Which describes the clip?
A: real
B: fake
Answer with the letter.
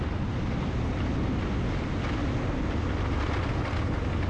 A